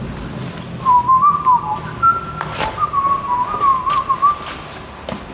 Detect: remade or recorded recorded